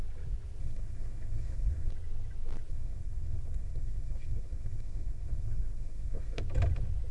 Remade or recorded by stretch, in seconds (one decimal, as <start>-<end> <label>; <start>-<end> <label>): 0.0-0.6 recorded; 0.6-1.9 remade; 1.9-2.7 recorded; 2.7-6.4 remade; 6.4-7.1 recorded